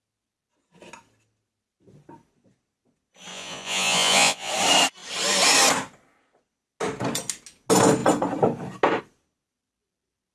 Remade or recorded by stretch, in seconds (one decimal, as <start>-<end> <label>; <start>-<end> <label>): 0.0-3.3 recorded; 3.3-4.5 remade; 4.5-10.3 recorded